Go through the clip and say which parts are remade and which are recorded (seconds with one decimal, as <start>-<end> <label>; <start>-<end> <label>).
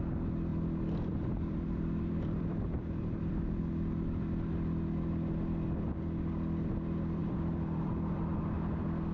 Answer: 0.0-0.5 recorded; 0.5-3.6 remade; 3.6-7.2 recorded; 7.2-8.4 remade; 8.4-9.1 recorded